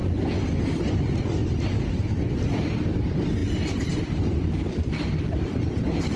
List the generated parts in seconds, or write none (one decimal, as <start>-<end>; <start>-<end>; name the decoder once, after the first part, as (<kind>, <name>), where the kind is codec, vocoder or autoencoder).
none